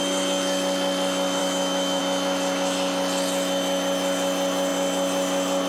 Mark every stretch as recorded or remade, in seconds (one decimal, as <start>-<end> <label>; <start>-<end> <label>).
0.0-1.4 recorded; 1.4-2.0 remade; 2.0-5.7 recorded